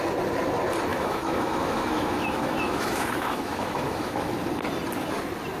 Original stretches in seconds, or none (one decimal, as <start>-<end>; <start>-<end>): 0.0-0.9; 4.3-5.6